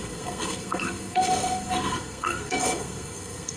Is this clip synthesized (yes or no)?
yes